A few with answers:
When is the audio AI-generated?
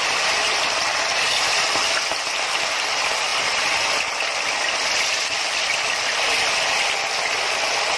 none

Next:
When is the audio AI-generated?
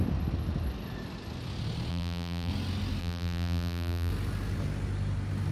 1.9-2.5 (vocoder, BigVGAN v2); 3.0-4.1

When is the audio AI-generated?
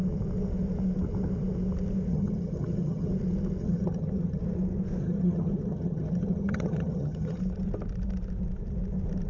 2.1-3.1 (vocoder, HiFi-GAN); 3.6-4.4; 5.0-7.4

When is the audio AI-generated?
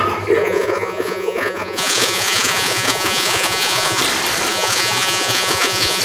0.4-4.0 (vocoder, Vocos); 4.5-6.0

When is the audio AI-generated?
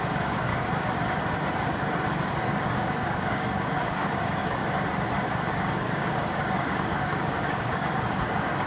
0.0-0.5 (codec, DAC); 2.2-4.6; 5.5-8.7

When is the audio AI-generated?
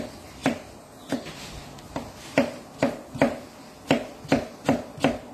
none